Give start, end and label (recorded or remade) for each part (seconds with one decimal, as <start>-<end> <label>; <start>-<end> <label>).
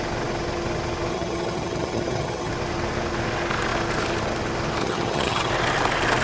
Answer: 0.0-1.1 recorded; 1.1-2.5 remade; 2.5-4.8 recorded; 4.8-5.5 remade; 5.5-6.2 recorded